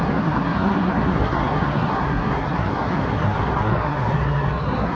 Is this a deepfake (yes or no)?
yes